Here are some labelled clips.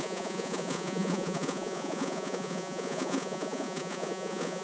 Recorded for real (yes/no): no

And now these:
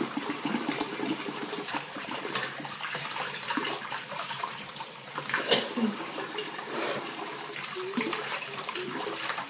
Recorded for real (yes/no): no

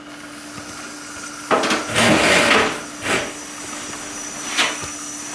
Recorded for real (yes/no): yes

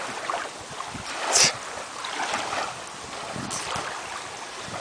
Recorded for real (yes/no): yes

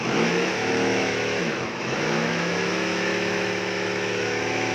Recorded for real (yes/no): no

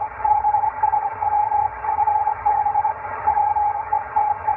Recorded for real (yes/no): no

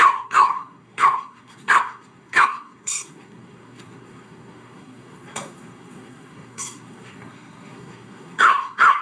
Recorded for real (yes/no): no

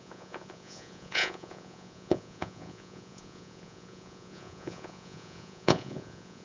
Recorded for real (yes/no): no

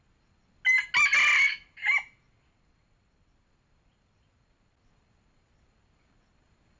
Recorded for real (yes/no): yes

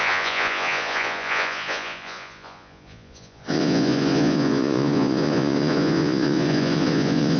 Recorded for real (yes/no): no